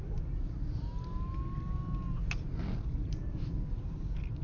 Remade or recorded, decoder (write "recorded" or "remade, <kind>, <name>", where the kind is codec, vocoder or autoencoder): recorded